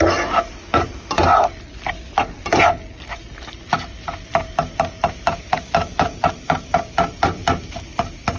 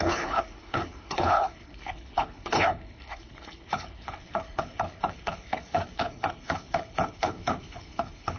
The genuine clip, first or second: first